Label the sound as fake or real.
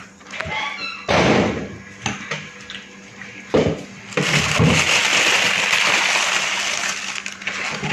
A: real